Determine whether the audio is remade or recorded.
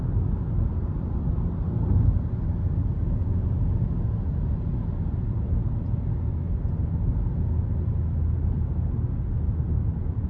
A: recorded